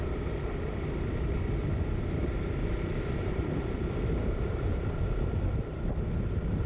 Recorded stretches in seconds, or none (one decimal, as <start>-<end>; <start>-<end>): 0.0-2.6; 5.0-6.7